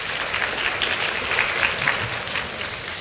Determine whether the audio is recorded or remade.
recorded